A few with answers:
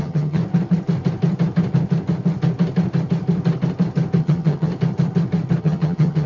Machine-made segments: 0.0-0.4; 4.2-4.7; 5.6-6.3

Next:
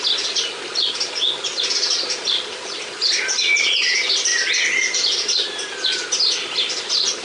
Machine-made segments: none

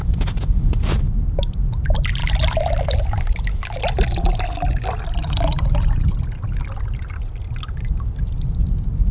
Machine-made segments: 2.2-3.5

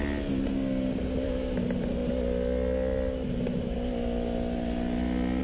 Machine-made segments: none

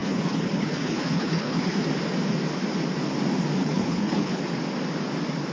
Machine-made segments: 0.0-1.9; 3.6-4.4